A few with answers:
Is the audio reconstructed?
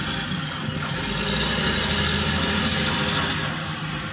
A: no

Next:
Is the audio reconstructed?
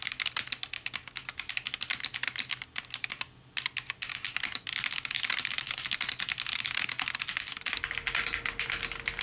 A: no